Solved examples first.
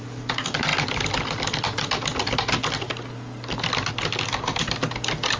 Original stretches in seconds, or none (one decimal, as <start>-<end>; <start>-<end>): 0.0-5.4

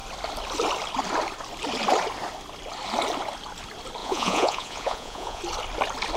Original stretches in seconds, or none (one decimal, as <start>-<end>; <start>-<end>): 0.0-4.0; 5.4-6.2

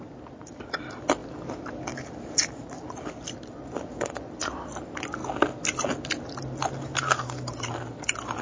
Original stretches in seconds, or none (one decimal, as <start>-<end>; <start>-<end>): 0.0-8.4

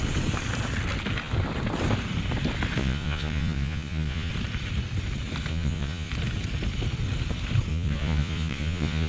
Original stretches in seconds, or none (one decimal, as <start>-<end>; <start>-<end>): 0.0-2.8; 4.3-5.5; 6.1-7.7